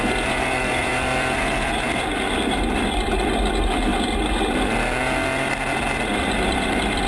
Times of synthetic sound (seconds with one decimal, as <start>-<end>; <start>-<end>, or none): 0.0-3.9; 5.5-7.1